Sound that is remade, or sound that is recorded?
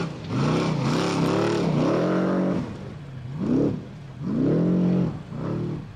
recorded